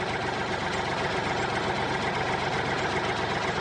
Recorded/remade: recorded